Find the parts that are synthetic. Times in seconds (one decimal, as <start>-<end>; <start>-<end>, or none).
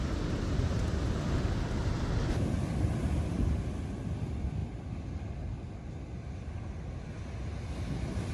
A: none